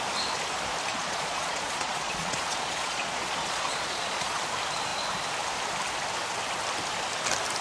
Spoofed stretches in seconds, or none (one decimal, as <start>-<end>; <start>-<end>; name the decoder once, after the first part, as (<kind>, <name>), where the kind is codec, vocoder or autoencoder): 0.9-4.4 (vocoder, Vocos)